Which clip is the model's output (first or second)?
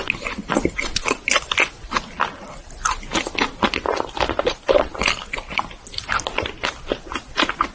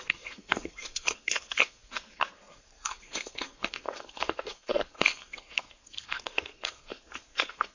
second